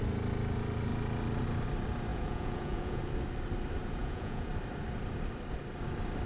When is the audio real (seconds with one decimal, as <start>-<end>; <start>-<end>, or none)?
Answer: 0.0-2.1; 3.0-4.0; 4.5-6.3